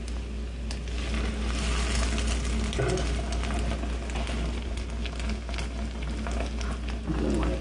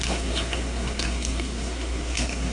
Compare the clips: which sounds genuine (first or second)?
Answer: first